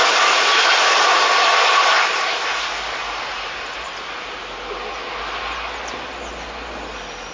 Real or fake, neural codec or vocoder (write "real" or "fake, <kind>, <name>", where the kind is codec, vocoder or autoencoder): real